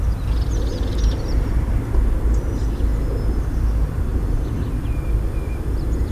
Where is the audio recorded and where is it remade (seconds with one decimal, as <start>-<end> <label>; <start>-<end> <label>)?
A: 0.0-0.7 recorded; 0.7-1.8 remade; 1.8-4.1 recorded; 4.1-4.7 remade; 4.7-6.1 recorded